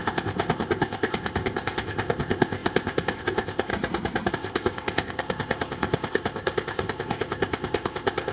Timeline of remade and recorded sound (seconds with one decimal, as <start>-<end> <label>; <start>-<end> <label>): 0.0-3.7 remade; 3.7-4.3 recorded; 4.3-8.3 remade